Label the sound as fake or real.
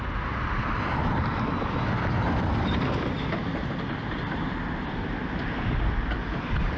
real